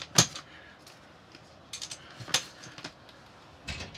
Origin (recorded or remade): recorded